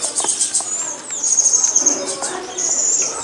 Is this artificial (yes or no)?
no